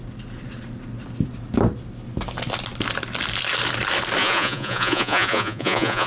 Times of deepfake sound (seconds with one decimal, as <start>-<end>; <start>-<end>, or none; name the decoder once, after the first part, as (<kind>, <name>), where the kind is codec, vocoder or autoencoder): 4.2-6.1 (vocoder, Vocos)